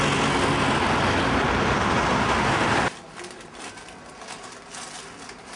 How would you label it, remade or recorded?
recorded